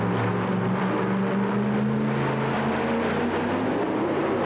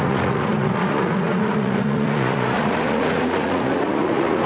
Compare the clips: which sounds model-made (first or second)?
second